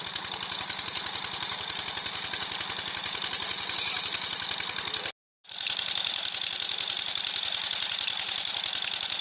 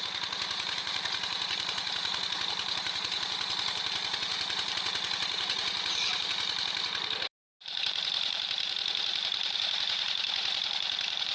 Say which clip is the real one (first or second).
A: first